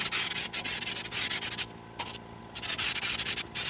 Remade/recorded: recorded